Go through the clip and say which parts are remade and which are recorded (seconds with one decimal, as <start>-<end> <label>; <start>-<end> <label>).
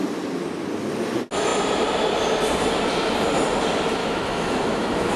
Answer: 0.0-4.0 recorded; 4.0-5.2 remade